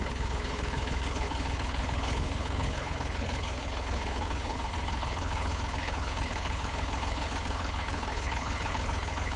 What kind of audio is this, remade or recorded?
remade